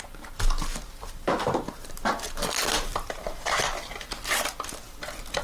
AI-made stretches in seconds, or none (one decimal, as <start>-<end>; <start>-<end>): 2.9-3.6